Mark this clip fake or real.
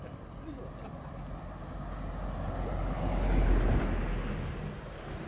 real